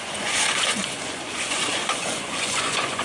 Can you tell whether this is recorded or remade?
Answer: remade